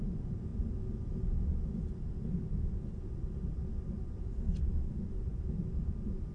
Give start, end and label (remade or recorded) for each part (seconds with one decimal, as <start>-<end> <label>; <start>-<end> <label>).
0.0-6.3 recorded